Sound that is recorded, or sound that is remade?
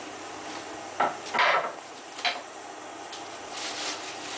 recorded